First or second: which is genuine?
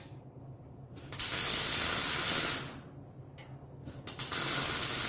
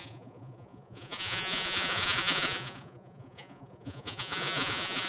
first